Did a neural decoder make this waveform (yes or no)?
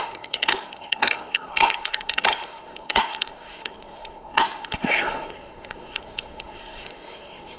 yes